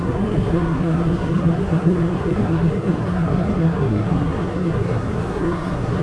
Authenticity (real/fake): fake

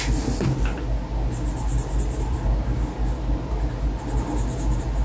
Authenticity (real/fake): real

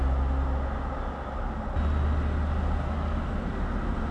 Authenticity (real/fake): real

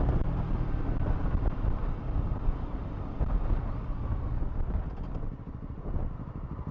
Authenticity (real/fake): real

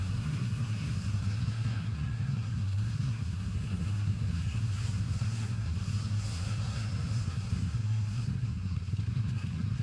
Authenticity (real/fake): fake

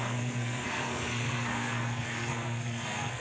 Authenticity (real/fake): fake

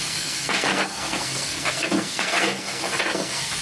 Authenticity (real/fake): fake